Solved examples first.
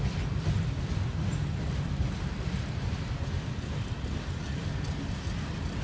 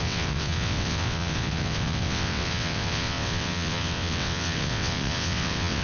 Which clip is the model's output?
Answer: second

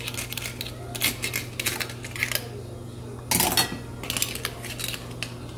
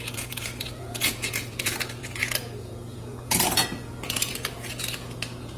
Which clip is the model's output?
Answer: second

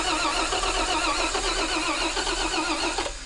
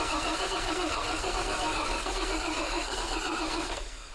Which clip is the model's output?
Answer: second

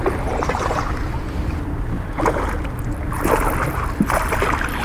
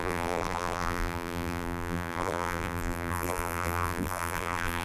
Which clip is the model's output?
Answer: second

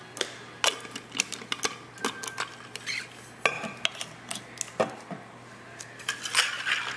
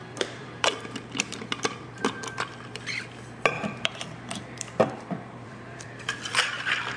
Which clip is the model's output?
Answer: second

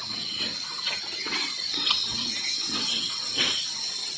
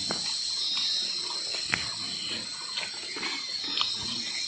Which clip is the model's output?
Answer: first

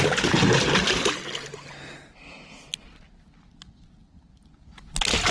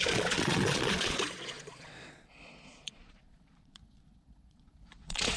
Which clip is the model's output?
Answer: second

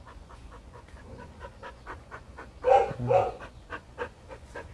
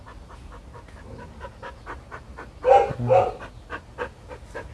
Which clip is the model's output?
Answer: first